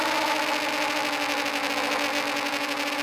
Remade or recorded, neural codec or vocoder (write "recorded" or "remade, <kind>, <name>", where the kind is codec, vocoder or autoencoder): recorded